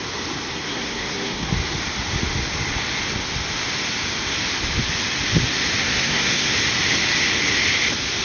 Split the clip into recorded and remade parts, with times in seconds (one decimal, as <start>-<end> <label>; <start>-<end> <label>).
0.0-0.5 recorded; 0.5-1.5 remade; 1.5-5.8 recorded; 5.8-6.5 remade; 6.5-8.2 recorded